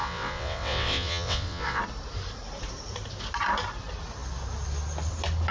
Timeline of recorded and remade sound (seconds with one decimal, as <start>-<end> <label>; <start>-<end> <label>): 0.0-1.8 remade; 1.8-5.5 recorded